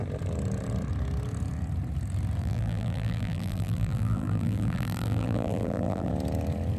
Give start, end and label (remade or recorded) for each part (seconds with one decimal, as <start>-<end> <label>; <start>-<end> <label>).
0.0-2.4 recorded; 2.4-6.1 remade; 6.1-6.8 recorded